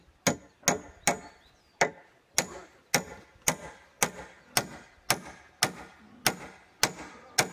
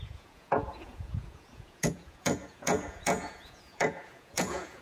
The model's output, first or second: second